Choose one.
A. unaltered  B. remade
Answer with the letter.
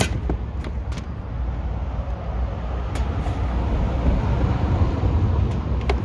A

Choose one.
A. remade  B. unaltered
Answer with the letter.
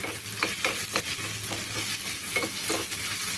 B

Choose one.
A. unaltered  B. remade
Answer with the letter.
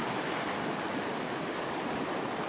A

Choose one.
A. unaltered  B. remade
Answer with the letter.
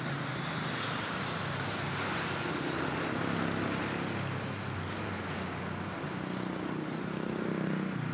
A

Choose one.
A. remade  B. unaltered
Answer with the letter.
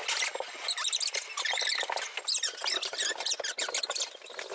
B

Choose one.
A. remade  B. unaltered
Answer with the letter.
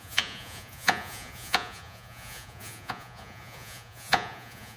A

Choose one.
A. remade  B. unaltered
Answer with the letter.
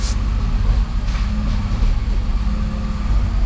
B